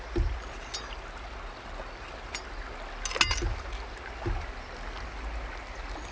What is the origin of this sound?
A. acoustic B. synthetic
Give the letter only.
A